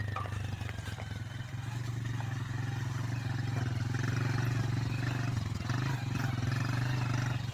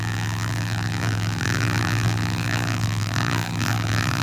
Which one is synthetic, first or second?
second